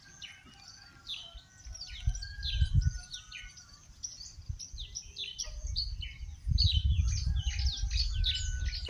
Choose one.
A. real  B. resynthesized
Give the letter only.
A